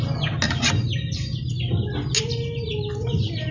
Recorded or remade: recorded